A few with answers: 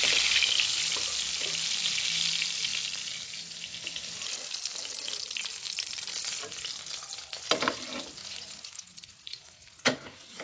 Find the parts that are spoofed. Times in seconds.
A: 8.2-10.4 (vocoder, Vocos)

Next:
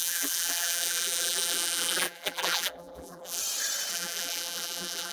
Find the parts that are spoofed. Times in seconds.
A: 0.0-3.4 (vocoder, BigVGAN v2); 3.9-5.1

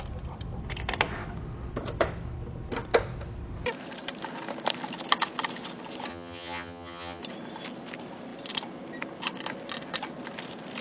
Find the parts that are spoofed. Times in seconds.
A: 6.1-7.2 (vocoder, HiFi-GAN)

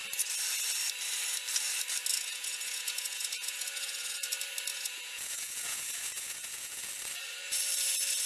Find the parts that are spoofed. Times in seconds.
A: 2.1-4.3 (vocoder, Vocos); 4.7-6.9